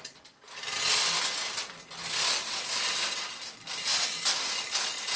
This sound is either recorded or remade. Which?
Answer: recorded